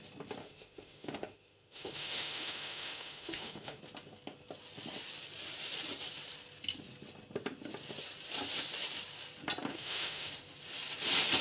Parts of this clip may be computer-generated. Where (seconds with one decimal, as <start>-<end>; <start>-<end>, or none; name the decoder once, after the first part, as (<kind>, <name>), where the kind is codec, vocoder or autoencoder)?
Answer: 0.4-3.8 (autoencoder, DAC-VAE); 9.7-10.3